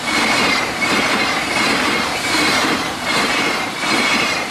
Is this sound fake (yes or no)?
yes